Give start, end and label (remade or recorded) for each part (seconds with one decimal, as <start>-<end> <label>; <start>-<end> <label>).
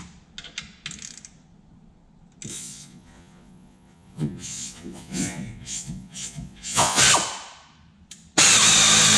0.0-2.5 recorded; 2.5-7.0 remade; 7.0-9.2 recorded